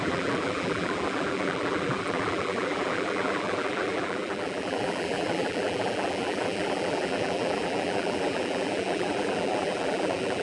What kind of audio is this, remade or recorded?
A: remade